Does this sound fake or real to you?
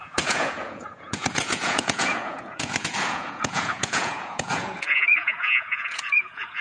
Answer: fake